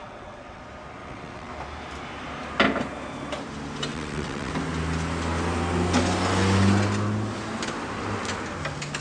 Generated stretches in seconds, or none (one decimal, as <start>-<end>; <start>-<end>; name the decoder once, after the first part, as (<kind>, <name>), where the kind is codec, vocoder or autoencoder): 0.0-0.6 (vocoder, WaveNeXt); 1.0-1.5; 3.9-4.5